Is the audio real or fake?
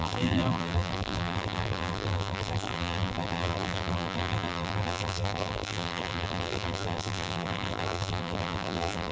fake